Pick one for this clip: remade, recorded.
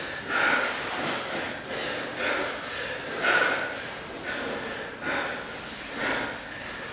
recorded